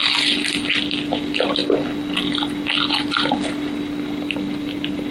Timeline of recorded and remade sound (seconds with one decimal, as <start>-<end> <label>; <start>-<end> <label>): 0.0-5.1 recorded